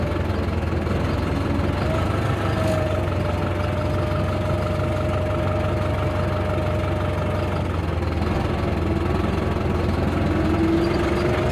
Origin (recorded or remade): recorded